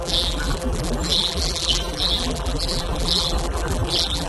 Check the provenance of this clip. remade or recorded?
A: remade